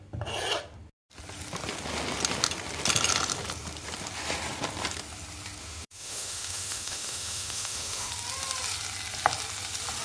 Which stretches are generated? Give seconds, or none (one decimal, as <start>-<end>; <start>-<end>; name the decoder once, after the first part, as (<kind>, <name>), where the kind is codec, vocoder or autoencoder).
5.6-8.1 (autoencoder, DAC-VAE)

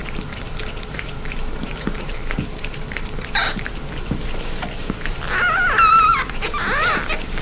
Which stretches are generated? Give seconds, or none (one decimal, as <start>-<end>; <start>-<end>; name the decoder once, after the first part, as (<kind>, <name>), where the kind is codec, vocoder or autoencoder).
0.0-7.4 (vocoder, BigVGAN v2)

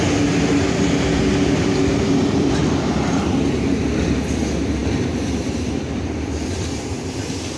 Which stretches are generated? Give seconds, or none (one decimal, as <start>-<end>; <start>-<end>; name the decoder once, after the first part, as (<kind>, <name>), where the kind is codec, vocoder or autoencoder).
1.9-2.6 (vocoder, BigVGAN v2); 4.8-7.6

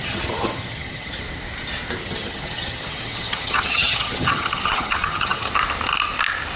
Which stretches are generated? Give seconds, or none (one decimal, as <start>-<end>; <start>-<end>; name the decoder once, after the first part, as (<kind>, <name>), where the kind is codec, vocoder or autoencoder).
0.0-1.2 (vocoder, HiFi-GAN); 2.0-5.5

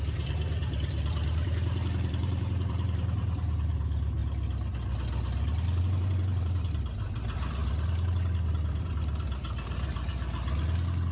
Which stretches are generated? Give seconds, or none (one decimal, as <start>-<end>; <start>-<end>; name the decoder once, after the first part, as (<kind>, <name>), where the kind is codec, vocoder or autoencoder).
0.0-4.2 (vocoder, BigVGAN v2); 5.8-10.1

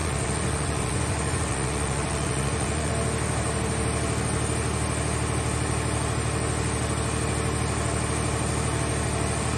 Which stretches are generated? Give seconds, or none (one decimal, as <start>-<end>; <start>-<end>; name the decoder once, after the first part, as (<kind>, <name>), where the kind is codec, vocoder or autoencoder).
0.0-2.9 (vocoder, Vocos)

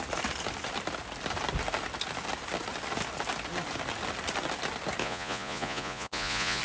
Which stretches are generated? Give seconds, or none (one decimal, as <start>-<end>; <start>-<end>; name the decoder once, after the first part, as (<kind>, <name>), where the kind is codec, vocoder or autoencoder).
5.0-6.6 (vocoder, Vocos)